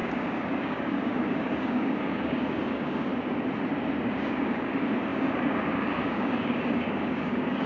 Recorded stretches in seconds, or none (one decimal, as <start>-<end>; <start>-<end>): 3.1-4.0